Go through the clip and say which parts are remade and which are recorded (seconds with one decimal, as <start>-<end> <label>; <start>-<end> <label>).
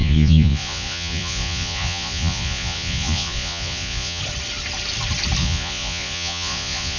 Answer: 0.0-4.2 remade; 4.2-5.4 recorded; 5.4-7.0 remade